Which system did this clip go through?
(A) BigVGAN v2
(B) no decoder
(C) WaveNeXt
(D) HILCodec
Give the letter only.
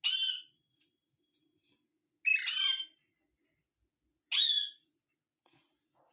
B